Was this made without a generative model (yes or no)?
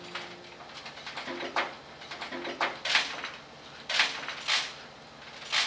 yes